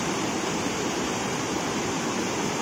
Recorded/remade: remade